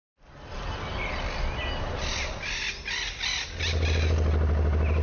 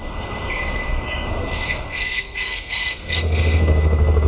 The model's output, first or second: second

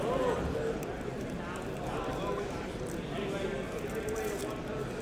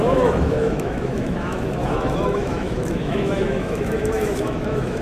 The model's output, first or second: second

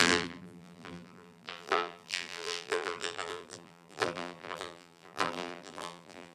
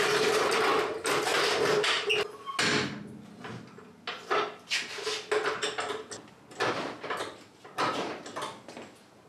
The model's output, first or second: first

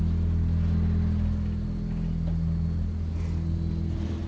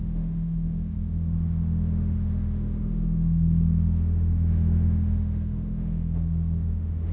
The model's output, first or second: second